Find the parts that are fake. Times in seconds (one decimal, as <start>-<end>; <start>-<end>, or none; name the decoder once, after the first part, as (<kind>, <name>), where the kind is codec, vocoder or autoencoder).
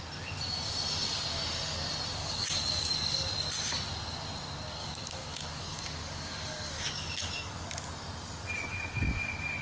2.2-3.3 (codec, DAC); 4.8-7.9